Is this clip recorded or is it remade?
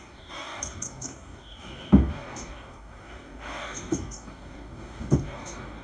remade